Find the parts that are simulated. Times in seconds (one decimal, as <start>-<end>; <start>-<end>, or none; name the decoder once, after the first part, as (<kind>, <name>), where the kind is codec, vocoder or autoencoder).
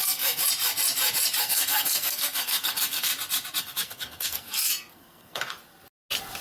0.0-0.4 (codec, SNAC); 1.4-3.1; 3.6-5.6